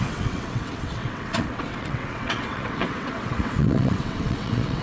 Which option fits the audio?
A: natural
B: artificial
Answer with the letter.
B